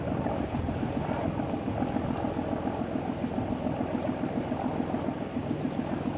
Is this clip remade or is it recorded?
recorded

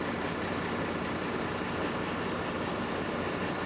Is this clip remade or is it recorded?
recorded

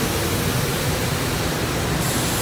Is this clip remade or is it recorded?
recorded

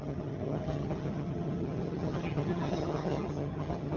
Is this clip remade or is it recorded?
remade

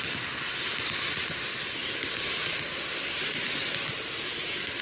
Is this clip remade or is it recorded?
recorded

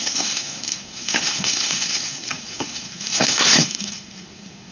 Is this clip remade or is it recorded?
remade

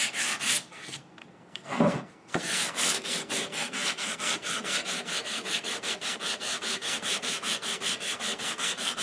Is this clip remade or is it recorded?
remade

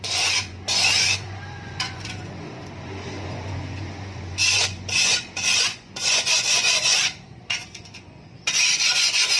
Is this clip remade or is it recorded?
remade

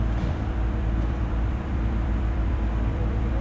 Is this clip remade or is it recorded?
remade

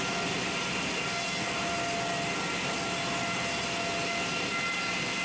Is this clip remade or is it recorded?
recorded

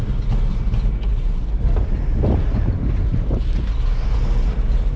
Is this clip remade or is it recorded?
recorded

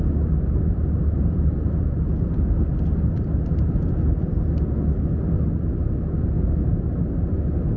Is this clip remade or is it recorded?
recorded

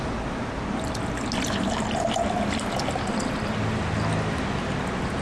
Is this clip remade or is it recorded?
recorded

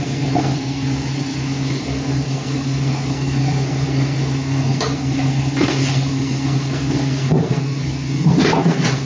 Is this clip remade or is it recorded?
remade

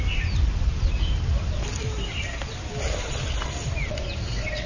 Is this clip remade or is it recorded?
recorded